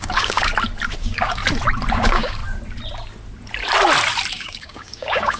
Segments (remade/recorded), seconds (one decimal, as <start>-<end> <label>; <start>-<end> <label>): 0.0-0.5 remade; 0.5-1.0 recorded; 1.0-1.4 remade; 1.4-1.9 recorded; 1.9-2.4 remade; 2.4-4.3 recorded; 4.3-5.4 remade